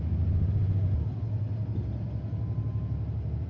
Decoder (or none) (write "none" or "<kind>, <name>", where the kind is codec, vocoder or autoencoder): none